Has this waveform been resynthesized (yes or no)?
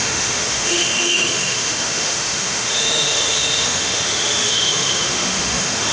yes